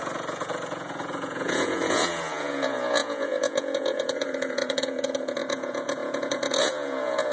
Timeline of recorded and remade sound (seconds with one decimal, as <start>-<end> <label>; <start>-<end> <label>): 0.0-7.3 remade